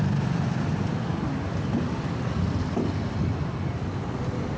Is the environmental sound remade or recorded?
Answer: recorded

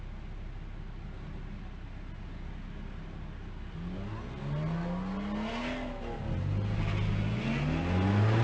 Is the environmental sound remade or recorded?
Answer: recorded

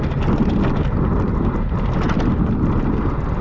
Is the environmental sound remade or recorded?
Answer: recorded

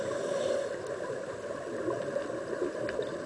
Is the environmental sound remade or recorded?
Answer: recorded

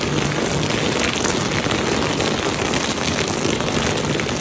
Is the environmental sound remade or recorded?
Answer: recorded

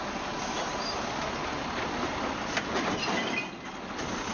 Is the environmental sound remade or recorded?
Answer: recorded